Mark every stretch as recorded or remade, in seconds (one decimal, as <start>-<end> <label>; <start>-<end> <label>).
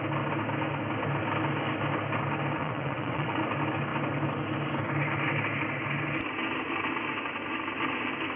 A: 0.0-2.6 recorded; 2.6-3.4 remade; 3.4-8.4 recorded